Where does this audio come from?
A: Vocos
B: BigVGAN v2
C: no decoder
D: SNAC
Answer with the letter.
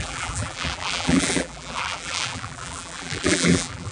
B